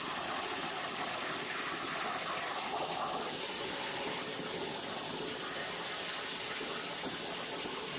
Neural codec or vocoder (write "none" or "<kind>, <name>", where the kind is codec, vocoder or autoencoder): none